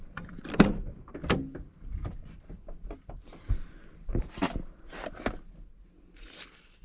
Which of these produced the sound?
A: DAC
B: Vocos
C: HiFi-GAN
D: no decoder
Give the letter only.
D